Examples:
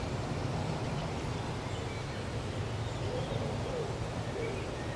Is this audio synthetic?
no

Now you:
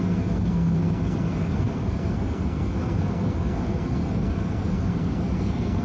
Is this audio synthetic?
yes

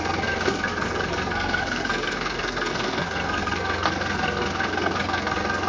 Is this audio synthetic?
yes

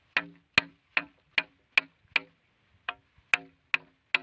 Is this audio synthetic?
no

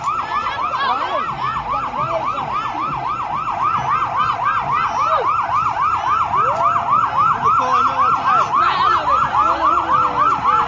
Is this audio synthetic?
no